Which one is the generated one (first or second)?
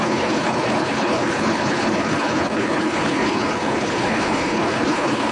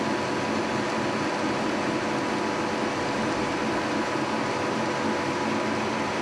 first